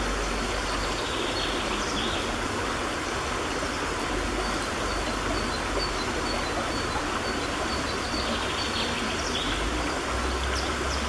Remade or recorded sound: recorded